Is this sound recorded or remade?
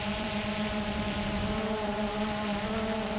remade